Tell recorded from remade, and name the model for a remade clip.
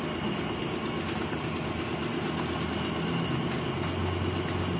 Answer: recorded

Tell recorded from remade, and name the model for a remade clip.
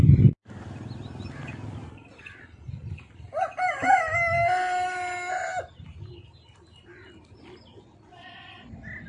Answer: recorded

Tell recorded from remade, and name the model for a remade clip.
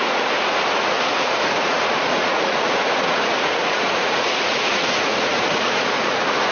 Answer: remade, vocoder, Vocos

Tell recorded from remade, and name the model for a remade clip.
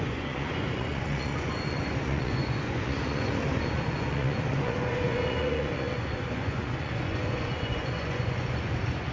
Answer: remade, vocoder, Vocos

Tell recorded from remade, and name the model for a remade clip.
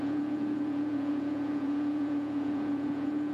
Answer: remade, vocoder, Vocos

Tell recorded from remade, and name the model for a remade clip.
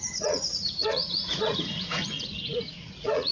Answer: remade, vocoder, Vocos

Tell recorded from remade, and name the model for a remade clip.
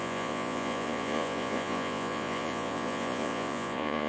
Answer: remade, vocoder, Vocos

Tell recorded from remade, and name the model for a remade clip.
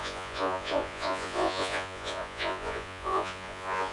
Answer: remade, vocoder, Vocos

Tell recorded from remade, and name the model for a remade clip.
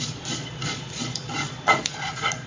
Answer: remade, vocoder, Vocos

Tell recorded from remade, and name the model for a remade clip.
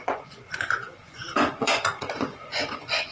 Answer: remade, vocoder, Vocos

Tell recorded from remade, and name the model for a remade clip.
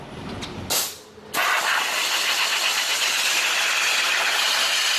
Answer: recorded